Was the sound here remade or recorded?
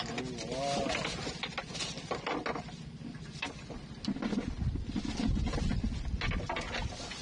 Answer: recorded